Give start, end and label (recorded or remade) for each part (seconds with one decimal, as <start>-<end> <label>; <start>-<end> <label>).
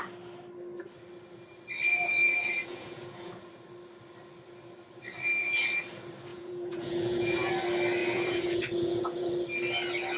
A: 0.0-1.9 recorded; 1.9-3.3 remade; 3.3-6.3 recorded; 6.3-7.5 remade; 7.5-8.0 recorded; 8.0-9.3 remade; 9.3-10.2 recorded